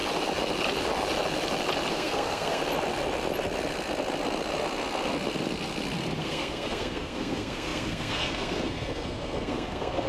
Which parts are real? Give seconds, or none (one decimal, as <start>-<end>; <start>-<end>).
0.0-1.9; 2.6-6.2